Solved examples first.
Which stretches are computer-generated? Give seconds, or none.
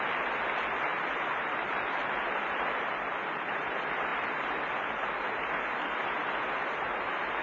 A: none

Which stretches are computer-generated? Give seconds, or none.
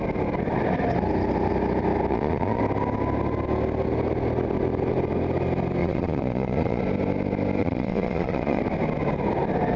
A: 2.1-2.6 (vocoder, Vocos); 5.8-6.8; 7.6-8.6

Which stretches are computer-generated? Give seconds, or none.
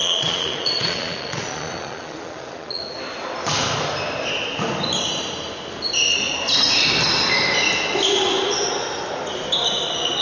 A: 0.0-2.8 (vocoder, Vocos)